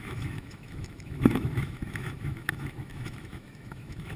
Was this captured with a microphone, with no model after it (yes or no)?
no